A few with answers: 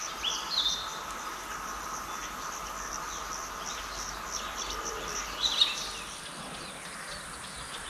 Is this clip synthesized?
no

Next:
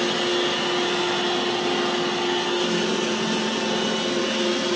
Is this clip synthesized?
no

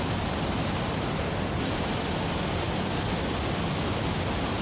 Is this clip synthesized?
no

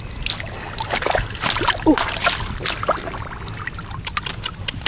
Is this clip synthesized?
no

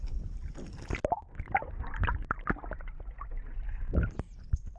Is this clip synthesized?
no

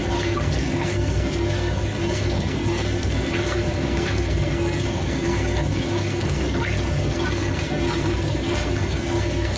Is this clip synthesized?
yes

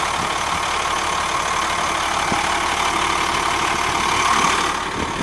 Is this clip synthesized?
no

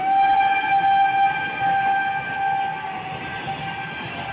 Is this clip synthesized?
no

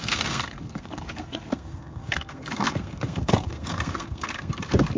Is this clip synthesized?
yes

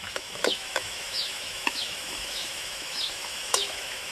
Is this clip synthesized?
yes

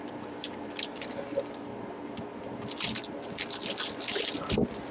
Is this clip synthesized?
no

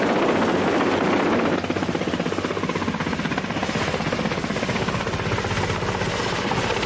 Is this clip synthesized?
no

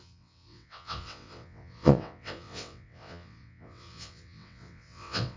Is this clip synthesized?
yes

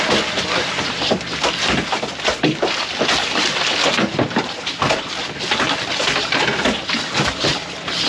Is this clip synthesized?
no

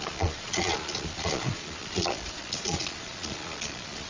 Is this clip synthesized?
yes